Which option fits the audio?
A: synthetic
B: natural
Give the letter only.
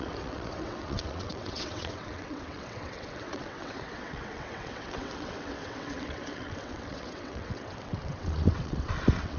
A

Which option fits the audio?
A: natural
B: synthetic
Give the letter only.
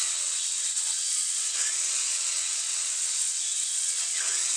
B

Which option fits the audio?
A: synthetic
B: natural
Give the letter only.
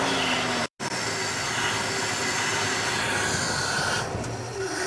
B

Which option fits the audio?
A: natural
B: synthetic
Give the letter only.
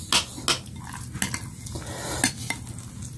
A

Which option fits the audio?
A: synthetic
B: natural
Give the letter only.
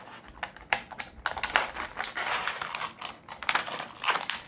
B